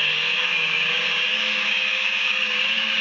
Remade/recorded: remade